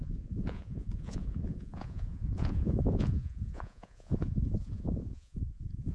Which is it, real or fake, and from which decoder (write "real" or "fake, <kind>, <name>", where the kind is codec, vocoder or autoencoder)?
fake, vocoder, Vocos